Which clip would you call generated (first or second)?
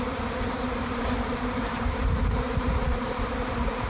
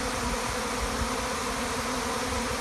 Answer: first